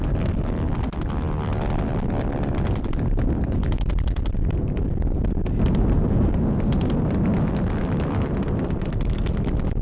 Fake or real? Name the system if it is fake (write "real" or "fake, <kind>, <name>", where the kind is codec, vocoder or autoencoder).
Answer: real